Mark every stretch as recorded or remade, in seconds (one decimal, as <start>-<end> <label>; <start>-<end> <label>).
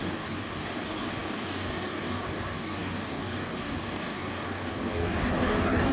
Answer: 0.0-5.9 remade